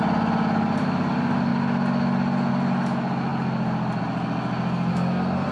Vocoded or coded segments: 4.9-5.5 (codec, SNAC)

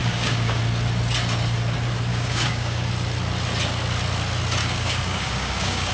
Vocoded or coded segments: 0.0-0.6 (codec, DAC); 2.1-2.9; 4.6-5.9

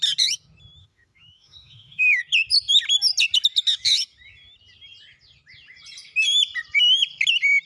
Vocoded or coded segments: 0.8-2.2 (autoencoder, DAC-VAE)

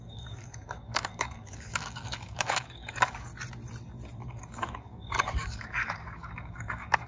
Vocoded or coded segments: 0.0-3.3 (codec, DAC); 4.3-7.1